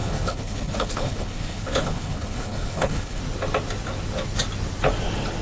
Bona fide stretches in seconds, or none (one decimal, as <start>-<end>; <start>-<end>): 3.2-5.4